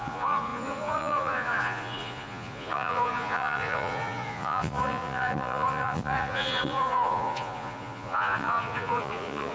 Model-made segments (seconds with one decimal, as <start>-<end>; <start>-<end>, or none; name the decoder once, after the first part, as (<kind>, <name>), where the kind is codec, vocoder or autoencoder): 0.0-9.5 (vocoder, Vocos)